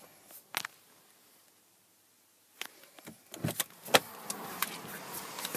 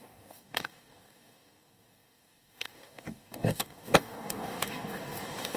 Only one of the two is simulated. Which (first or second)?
second